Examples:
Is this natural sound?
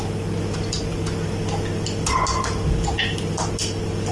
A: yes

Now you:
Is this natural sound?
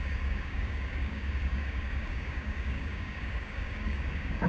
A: no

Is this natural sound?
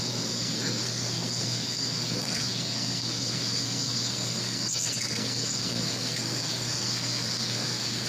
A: no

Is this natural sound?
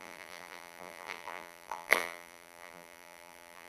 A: no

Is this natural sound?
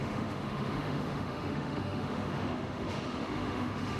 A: no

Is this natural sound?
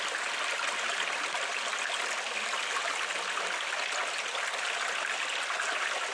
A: yes